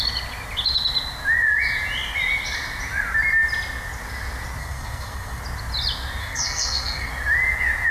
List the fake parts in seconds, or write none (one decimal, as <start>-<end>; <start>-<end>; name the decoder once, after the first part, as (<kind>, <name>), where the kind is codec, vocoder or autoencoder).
4.6-5.4 (codec, SNAC); 6.2-7.1